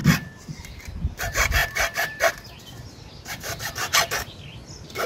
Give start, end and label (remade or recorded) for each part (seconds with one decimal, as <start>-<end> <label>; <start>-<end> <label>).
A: 0.0-5.1 recorded